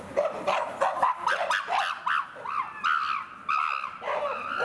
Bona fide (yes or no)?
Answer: yes